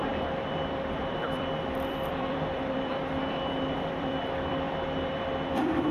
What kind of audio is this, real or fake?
fake